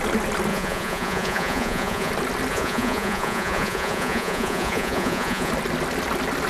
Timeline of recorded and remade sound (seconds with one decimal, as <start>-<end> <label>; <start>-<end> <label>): 0.0-0.5 recorded; 0.5-2.1 remade; 2.1-2.5 recorded; 2.5-5.5 remade; 5.5-6.5 recorded